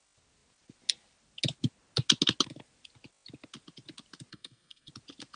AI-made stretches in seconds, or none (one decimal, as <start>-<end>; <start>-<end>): 4.3-4.9